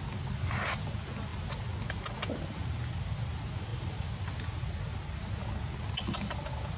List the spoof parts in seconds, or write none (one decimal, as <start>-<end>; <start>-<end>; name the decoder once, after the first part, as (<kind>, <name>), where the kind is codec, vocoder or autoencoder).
none